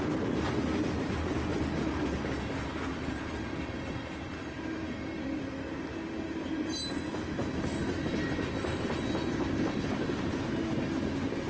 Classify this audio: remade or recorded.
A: recorded